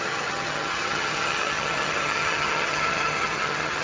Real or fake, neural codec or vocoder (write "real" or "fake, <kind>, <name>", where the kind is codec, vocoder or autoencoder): fake, vocoder, HiFi-GAN